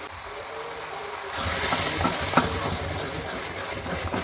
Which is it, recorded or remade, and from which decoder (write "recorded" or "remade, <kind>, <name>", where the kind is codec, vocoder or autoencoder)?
recorded